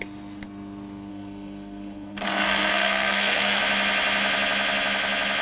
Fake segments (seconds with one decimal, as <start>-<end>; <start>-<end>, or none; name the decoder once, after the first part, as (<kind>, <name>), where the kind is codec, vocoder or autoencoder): 1.1-3.6 (codec, SNAC)